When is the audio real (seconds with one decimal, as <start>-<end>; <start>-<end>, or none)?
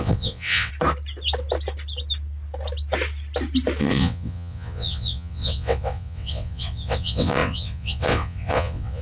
0.7-3.8